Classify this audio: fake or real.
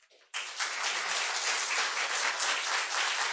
real